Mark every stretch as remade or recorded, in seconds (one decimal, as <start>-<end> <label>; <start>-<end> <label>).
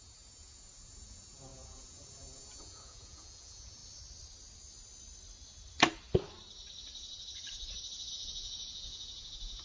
0.0-3.8 remade; 3.8-8.1 recorded; 8.1-9.6 remade